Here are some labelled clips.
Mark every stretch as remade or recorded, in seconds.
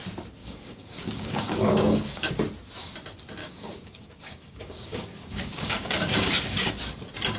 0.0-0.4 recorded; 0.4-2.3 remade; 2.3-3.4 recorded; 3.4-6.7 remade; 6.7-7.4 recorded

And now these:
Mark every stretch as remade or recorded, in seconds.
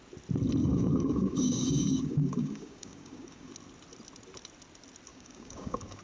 0.0-0.6 recorded; 0.6-3.5 remade; 3.5-5.1 recorded; 5.1-6.0 remade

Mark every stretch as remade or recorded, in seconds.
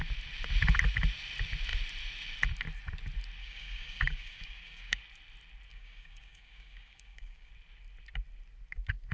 0.0-3.4 recorded; 3.4-5.0 remade; 5.0-5.7 recorded; 5.7-7.5 remade; 7.5-9.1 recorded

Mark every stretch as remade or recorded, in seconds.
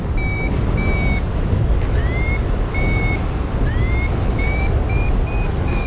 0.0-1.5 recorded; 1.5-2.0 remade; 2.0-5.5 recorded; 5.5-5.9 remade